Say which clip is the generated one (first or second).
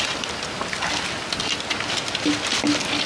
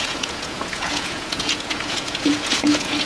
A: second